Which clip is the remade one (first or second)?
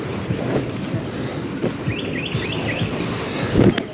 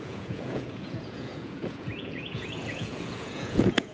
second